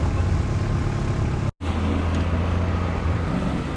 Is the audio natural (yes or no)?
yes